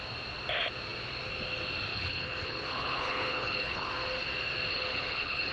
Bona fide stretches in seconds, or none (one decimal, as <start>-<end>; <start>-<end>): 0.0-1.9; 3.9-4.7